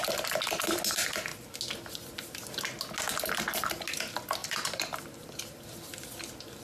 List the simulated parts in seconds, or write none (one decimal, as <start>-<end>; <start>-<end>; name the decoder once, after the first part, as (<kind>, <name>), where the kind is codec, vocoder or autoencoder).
4.4-5.6 (vocoder, BigVGAN v2)